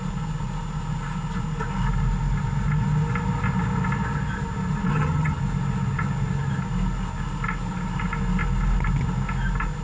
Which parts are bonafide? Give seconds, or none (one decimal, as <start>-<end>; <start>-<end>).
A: 0.0-4.9; 5.4-9.8